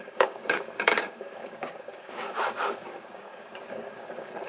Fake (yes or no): yes